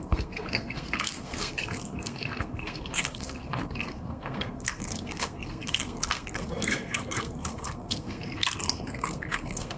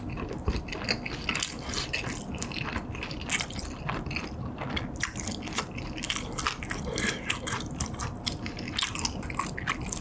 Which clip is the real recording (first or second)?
second